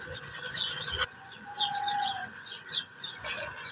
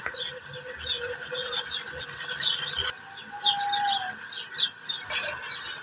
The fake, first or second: first